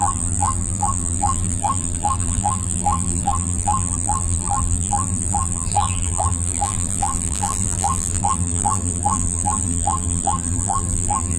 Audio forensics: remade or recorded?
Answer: remade